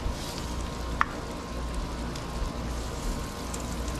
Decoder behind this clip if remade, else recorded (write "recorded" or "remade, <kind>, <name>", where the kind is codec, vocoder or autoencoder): recorded